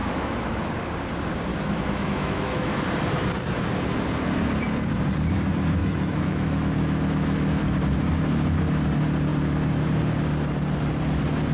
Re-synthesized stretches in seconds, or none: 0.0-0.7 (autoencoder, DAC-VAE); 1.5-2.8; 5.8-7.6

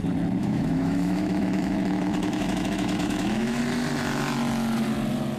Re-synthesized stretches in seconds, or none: 0.4-3.6 (autoencoder, DAC-VAE)